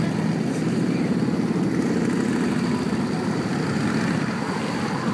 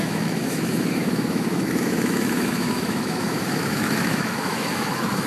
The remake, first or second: second